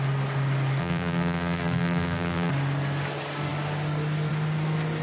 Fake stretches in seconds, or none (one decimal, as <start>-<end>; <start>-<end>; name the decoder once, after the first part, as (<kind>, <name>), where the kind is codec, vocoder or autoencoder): 0.8-2.5 (vocoder, BigVGAN v2)